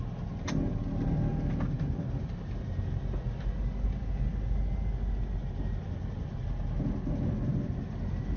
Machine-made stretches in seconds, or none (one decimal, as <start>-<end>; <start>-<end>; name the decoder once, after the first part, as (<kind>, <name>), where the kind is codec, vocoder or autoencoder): none